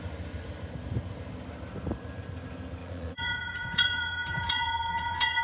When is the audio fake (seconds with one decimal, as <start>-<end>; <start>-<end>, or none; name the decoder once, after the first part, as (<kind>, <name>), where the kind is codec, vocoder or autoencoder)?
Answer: 2.8-5.4 (vocoder, Vocos)